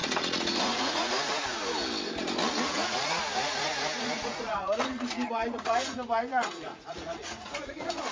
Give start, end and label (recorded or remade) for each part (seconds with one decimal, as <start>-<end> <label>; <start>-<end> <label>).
0.0-1.6 remade; 1.6-2.6 recorded; 2.6-8.1 remade